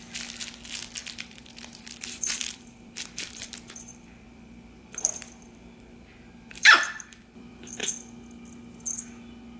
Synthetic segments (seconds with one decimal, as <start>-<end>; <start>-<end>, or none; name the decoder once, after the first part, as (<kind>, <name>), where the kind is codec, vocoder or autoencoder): 1.0-3.5 (vocoder, BigVGAN v2); 3.9-7.9